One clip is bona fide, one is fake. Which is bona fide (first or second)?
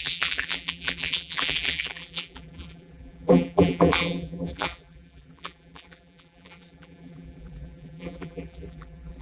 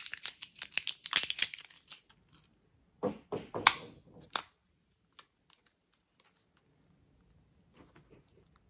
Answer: second